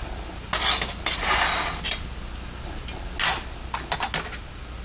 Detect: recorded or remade recorded